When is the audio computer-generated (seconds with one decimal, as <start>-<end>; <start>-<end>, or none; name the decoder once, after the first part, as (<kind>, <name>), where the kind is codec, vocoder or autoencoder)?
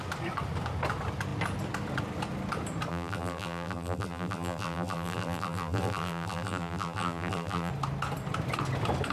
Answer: 2.9-7.7 (vocoder, BigVGAN v2)